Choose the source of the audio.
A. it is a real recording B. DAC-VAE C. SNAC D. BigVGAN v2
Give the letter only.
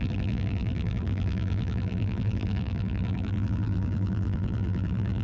D